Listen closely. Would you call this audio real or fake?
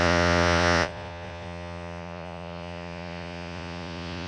fake